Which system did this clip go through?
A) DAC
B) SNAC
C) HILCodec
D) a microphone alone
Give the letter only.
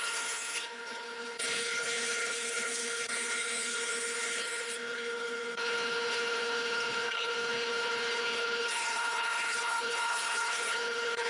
C